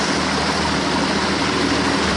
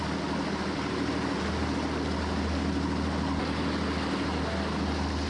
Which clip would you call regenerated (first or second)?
first